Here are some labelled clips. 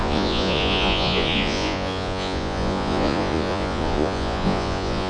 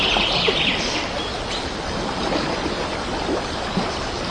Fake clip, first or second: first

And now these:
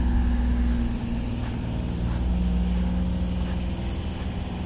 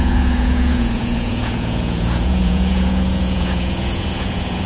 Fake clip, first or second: second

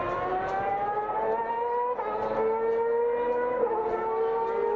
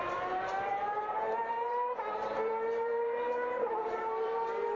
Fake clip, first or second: second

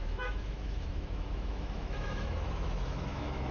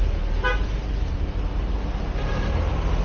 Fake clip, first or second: first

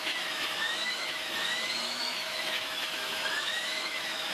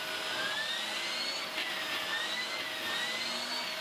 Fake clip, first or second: first